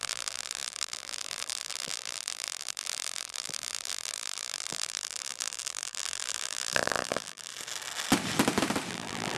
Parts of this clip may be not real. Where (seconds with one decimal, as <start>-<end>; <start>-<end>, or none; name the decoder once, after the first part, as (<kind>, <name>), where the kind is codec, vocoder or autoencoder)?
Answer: 0.0-7.5 (vocoder, BigVGAN v2); 8.9-9.4